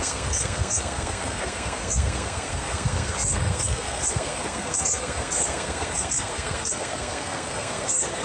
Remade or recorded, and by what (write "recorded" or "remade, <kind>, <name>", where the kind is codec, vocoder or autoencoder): remade, codec, SNAC